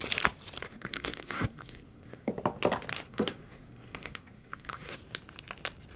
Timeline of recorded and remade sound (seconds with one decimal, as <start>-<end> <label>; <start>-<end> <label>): 0.0-0.7 recorded; 0.7-2.3 remade; 2.3-2.9 recorded; 2.9-5.0 remade; 5.0-6.0 recorded